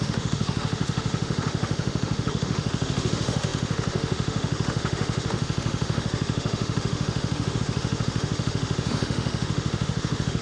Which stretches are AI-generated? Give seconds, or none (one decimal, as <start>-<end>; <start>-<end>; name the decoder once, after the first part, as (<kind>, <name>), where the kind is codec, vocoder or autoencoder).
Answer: 0.0-10.4 (autoencoder, DAC-VAE)